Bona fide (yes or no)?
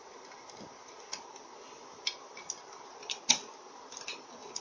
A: yes